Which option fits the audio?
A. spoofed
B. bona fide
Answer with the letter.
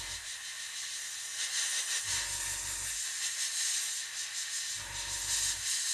B